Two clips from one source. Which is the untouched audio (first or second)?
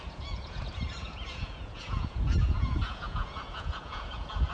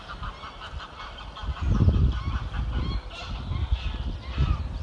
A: second